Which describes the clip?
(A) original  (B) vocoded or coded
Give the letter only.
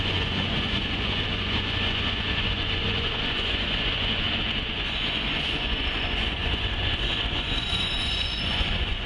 B